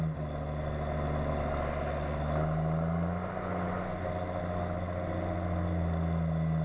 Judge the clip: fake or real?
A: real